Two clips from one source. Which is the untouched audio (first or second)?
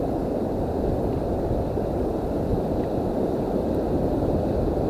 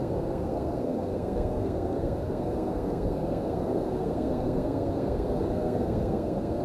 first